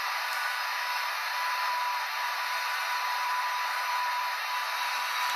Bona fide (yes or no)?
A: no